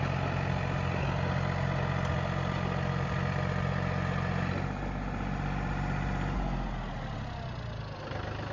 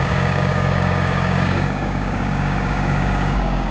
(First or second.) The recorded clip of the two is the first